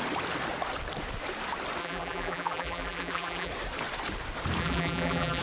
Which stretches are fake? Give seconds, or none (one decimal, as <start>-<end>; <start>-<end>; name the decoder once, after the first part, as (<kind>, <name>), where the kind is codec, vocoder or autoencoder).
1.8-3.5 (vocoder, BigVGAN v2); 4.6-5.4